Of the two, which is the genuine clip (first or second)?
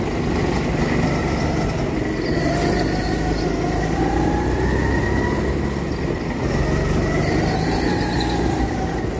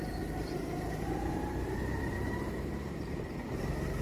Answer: first